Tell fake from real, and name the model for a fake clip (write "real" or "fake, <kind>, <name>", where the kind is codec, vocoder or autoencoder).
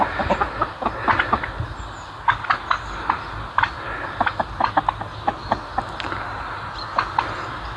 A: real